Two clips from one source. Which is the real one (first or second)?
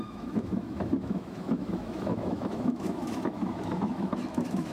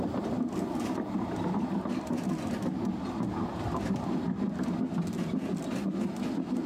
second